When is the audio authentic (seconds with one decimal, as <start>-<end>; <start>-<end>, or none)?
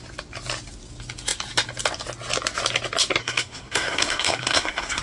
0.0-3.2